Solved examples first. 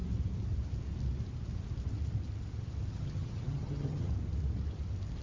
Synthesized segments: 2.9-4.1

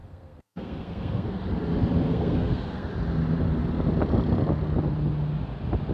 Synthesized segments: 0.0-1.4; 2.1-2.9

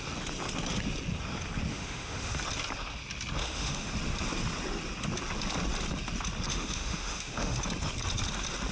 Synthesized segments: 1.7-2.4; 3.4-3.9; 6.5-7.6

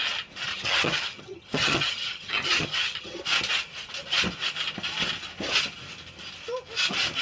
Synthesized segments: 0.5-3.2

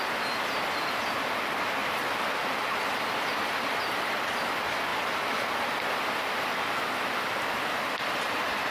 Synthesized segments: none

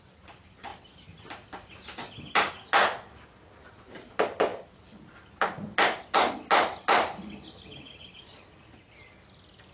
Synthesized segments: none